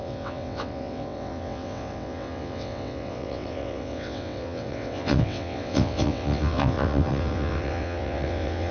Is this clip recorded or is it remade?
remade